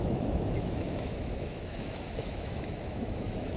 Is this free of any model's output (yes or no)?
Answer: no